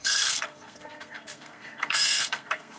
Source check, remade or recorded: remade